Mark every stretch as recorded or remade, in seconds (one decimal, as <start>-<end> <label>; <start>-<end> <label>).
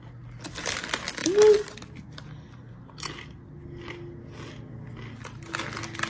0.0-6.1 recorded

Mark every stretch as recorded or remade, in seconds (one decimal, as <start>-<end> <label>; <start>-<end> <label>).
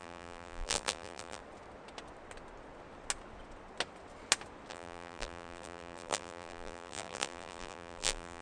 0.0-1.4 remade; 1.4-4.7 recorded; 4.7-8.4 remade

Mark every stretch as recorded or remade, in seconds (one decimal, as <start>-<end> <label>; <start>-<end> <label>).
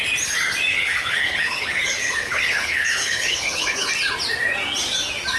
0.0-0.7 recorded; 0.7-3.9 remade; 3.9-5.4 recorded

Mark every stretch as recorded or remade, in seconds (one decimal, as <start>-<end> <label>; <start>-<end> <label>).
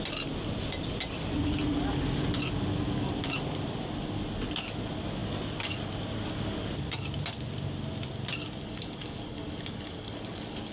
0.0-8.4 recorded; 8.4-10.7 remade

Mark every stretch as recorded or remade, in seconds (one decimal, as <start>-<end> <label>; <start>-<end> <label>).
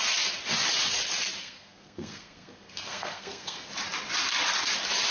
0.0-1.4 recorded; 1.4-3.7 remade; 3.7-5.1 recorded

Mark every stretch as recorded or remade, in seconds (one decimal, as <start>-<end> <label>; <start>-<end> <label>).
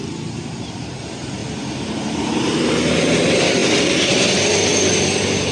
0.0-5.5 remade